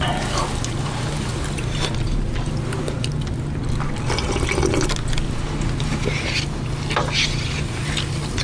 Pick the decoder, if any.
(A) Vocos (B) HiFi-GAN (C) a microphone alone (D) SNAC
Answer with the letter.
C